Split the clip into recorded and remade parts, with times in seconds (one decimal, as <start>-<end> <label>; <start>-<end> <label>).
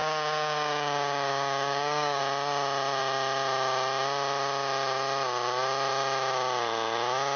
0.0-2.2 remade; 2.2-7.4 recorded